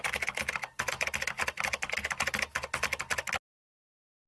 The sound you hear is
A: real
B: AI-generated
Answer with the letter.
A